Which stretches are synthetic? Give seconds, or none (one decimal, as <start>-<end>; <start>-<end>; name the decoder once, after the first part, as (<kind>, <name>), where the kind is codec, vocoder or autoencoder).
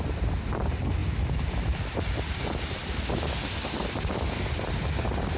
none